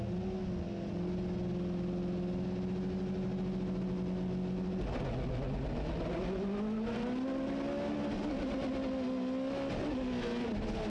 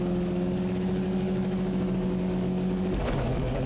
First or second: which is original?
first